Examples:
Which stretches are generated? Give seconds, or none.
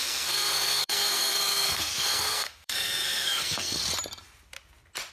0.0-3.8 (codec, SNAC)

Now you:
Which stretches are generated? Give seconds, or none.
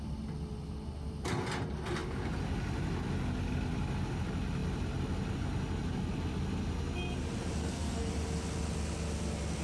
7.6-8.1 (codec, SNAC)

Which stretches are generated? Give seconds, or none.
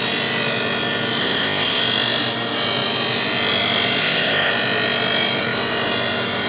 1.2-1.8 (codec, ZipCodec); 4.0-4.5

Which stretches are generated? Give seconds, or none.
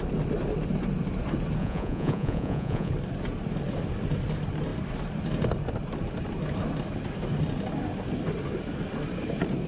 1.6-2.9 (vocoder, Vocos)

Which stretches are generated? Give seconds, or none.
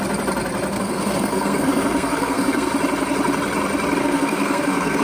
0.7-2.7 (codec, SNAC); 4.0-5.0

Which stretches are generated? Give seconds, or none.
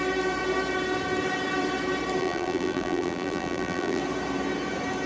2.2-4.0 (vocoder, BigVGAN v2)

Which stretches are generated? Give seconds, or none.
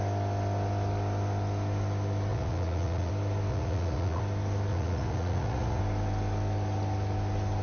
2.3-3.1 (vocoder, Vocos); 3.5-4.2; 4.7-5.8